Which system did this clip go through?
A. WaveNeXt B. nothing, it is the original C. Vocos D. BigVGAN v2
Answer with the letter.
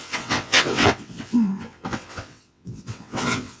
A